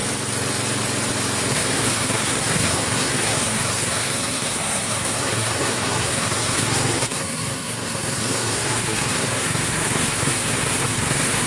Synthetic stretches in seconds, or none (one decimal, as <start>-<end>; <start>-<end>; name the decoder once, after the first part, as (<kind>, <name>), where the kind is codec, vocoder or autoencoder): 1.5-11.5 (codec, SNAC)